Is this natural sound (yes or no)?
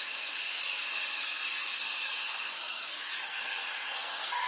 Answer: no